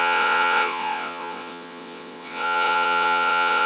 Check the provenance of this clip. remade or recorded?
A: remade